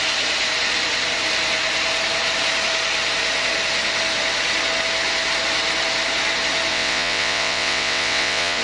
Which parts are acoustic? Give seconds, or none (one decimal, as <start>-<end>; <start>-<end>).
0.0-6.7